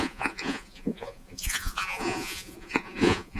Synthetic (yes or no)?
yes